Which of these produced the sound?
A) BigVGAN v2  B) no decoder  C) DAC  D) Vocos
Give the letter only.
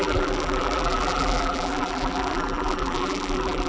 A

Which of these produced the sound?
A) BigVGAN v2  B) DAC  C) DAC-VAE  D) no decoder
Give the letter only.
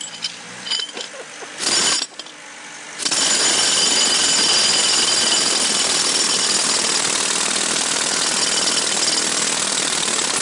D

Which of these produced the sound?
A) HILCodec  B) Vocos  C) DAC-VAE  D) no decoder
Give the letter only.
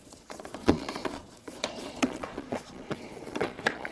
B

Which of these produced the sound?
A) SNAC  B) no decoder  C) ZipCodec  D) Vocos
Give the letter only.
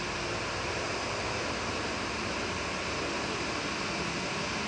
B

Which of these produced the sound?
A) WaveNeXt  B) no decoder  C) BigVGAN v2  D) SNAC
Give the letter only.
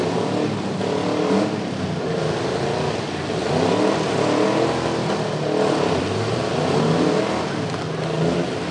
B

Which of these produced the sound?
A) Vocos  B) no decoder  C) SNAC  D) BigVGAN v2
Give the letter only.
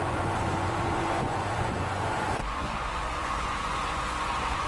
A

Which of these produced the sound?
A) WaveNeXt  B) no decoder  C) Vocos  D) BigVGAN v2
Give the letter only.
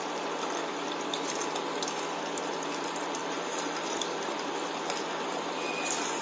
D